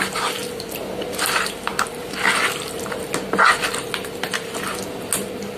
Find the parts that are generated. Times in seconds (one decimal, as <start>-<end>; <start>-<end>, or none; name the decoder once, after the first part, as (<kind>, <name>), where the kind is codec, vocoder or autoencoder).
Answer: none